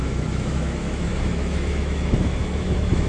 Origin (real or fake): fake